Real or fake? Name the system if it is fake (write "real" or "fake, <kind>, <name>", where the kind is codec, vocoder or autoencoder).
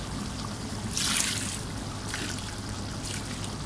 real